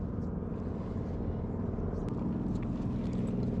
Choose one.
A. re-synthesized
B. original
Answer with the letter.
B